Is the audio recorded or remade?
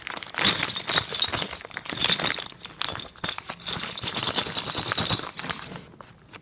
recorded